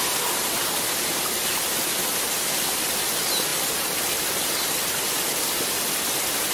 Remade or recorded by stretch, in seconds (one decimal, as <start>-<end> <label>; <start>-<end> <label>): 0.0-6.5 recorded